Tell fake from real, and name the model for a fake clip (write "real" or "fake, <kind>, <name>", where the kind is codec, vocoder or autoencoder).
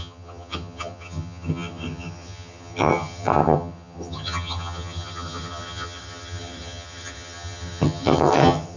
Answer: fake, vocoder, HiFi-GAN